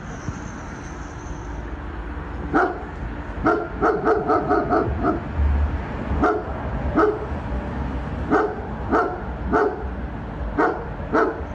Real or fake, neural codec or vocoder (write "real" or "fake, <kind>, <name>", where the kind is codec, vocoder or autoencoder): real